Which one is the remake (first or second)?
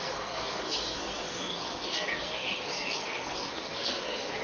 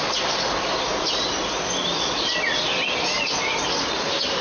first